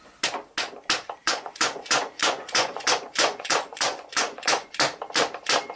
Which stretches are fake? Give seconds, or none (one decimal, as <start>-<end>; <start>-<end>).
1.2-4.7